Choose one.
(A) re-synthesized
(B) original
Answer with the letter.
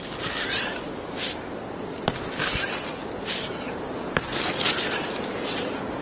B